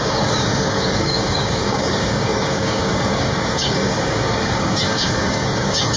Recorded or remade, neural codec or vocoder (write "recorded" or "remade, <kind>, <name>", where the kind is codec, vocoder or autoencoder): remade, codec, DAC